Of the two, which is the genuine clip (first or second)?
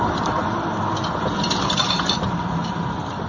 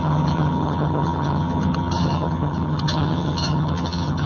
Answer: first